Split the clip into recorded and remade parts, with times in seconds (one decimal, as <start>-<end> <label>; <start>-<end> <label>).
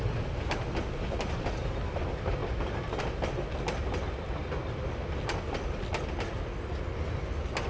0.0-7.7 recorded